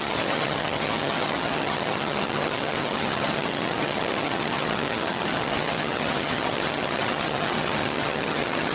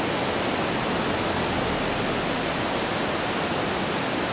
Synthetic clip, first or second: first